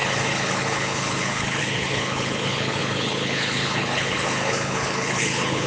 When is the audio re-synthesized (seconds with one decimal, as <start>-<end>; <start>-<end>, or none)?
0.0-5.7